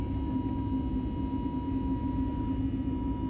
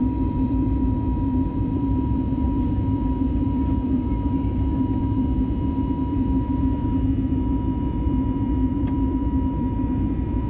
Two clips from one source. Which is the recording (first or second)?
first